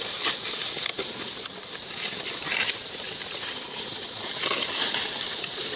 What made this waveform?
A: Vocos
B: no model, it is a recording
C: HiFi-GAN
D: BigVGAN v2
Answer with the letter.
B